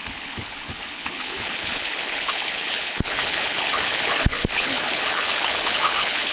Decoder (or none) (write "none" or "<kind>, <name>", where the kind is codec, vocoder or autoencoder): codec, HILCodec